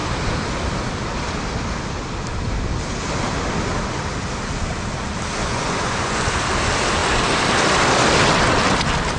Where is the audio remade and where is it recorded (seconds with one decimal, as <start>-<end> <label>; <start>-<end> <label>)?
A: 0.0-5.4 recorded; 5.4-6.2 remade; 6.2-9.2 recorded